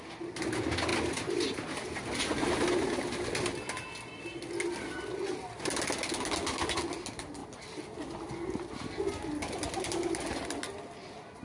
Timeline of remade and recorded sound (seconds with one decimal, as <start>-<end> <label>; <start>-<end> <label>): 0.0-11.4 recorded

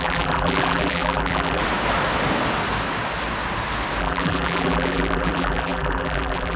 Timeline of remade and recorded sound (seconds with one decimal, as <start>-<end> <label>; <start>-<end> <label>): 0.0-1.6 remade; 1.6-4.0 recorded; 4.0-6.6 remade

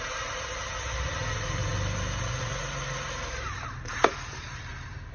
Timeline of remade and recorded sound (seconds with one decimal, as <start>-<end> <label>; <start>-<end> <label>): 0.0-0.5 remade; 0.5-1.2 recorded; 1.2-5.1 remade

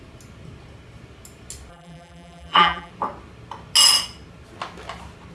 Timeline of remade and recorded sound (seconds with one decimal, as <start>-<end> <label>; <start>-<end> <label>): 0.0-1.7 recorded; 1.7-2.9 remade; 2.9-5.3 recorded

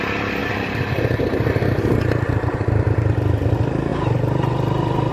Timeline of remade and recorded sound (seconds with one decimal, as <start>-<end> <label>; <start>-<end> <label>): 0.0-0.4 recorded; 0.4-3.5 remade; 3.5-3.9 recorded; 3.9-5.1 remade